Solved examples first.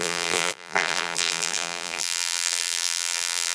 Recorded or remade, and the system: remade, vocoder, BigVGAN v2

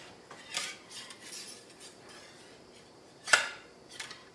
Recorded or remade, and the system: remade, vocoder, BigVGAN v2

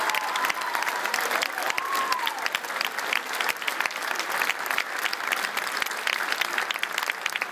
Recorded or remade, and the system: recorded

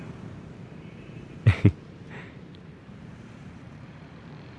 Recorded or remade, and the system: remade, vocoder, BigVGAN v2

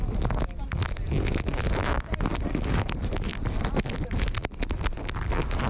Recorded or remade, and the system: recorded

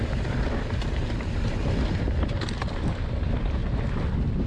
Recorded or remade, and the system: remade, vocoder, BigVGAN v2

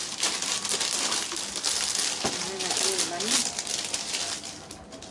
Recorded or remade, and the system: recorded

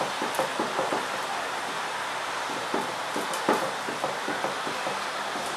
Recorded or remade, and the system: remade, vocoder, BigVGAN v2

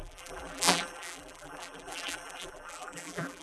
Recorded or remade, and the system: remade, vocoder, BigVGAN v2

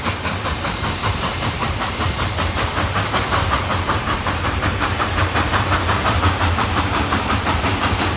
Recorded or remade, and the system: remade, vocoder, BigVGAN v2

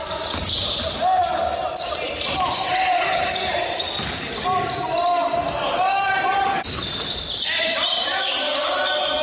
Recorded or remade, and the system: recorded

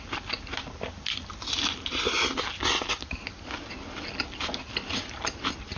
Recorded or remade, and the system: recorded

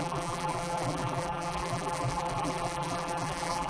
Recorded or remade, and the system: remade, vocoder, BigVGAN v2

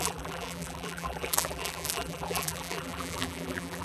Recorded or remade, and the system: remade, vocoder, BigVGAN v2